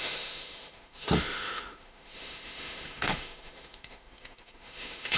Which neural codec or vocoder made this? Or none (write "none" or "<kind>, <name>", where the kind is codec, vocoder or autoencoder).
autoencoder, DAC-VAE